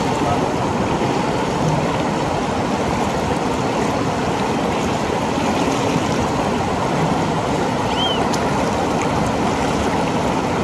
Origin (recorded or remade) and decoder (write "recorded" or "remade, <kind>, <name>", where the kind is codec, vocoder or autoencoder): recorded